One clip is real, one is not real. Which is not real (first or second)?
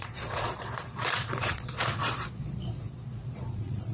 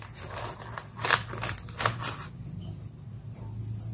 first